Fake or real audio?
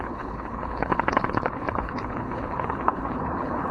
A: fake